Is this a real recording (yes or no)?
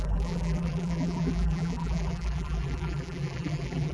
no